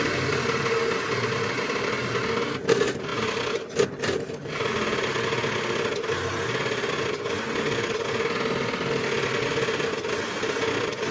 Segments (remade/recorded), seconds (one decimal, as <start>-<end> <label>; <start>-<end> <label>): 0.0-11.1 recorded